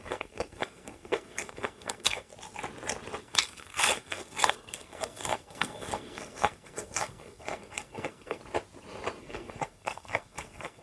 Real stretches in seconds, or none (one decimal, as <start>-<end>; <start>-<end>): 2.3-3.2; 8.4-9.2